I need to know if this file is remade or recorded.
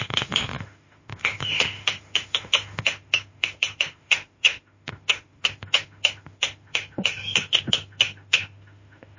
remade